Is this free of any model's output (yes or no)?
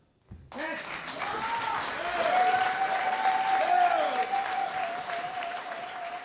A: yes